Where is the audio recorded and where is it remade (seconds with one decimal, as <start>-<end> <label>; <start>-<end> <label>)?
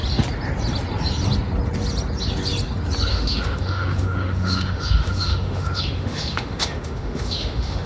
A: 0.0-3.1 recorded; 3.1-7.9 remade